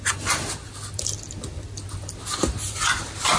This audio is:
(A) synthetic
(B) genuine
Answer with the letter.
B